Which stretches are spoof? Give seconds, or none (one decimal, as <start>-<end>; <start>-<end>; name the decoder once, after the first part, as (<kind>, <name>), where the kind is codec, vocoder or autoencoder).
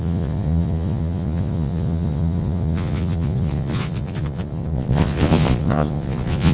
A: 0.0-6.5 (vocoder, Vocos)